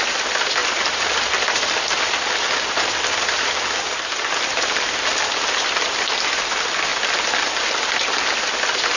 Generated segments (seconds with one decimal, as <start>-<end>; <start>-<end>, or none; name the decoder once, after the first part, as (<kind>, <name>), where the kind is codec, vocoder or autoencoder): 0.0-6.9 (vocoder, BigVGAN v2); 8.4-9.0